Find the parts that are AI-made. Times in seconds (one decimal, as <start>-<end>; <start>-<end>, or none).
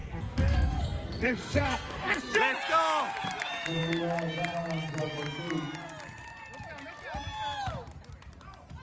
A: 0.0-2.2